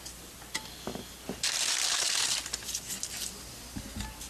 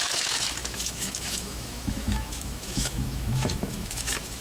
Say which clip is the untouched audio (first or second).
first